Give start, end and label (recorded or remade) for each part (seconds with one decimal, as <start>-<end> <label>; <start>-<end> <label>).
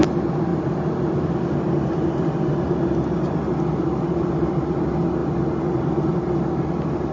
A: 0.0-7.1 recorded